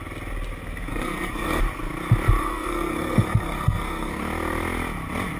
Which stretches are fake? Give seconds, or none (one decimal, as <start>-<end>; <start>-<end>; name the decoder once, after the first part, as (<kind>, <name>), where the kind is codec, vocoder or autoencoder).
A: 0.9-1.6 (codec, SNAC); 2.4-4.2